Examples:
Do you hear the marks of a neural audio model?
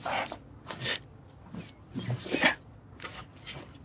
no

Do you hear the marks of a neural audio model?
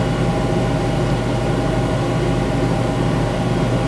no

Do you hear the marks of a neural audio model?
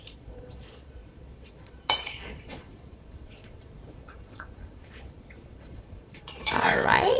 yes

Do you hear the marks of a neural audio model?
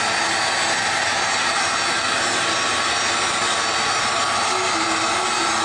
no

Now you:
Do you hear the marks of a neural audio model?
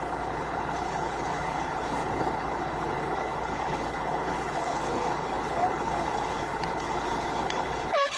yes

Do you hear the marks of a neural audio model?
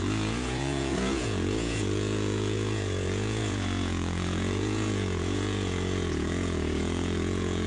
yes